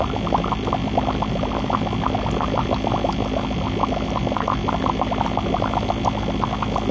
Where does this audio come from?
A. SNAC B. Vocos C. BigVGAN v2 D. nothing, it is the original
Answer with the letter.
D